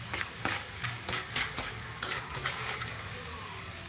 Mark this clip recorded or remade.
remade